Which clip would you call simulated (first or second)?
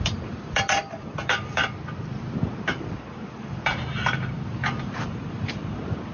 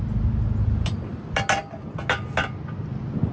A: first